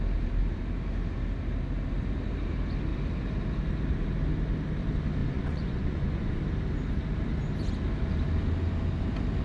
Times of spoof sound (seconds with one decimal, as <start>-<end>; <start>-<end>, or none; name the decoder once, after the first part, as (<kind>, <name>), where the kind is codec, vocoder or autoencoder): 5.2-6.4 (vocoder, Vocos)